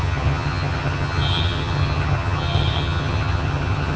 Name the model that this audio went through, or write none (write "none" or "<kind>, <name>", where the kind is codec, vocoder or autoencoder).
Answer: vocoder, HiFi-GAN